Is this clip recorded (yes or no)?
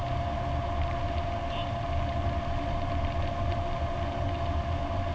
yes